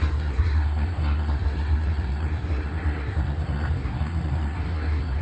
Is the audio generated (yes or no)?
yes